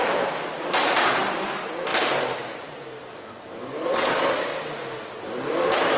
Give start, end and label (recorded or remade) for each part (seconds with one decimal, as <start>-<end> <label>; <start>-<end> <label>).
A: 0.0-1.9 remade; 1.9-3.5 recorded; 3.5-4.5 remade; 4.5-5.2 recorded; 5.2-6.0 remade